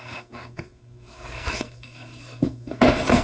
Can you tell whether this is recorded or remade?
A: remade